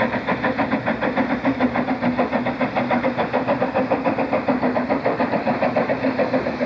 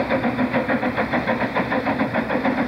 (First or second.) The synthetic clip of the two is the second